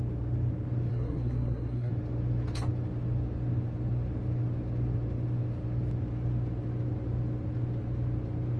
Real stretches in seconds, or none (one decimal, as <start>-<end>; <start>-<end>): 0.0-0.9; 1.9-8.6